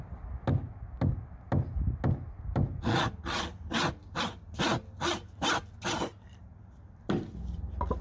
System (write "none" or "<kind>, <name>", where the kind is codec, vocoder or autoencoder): none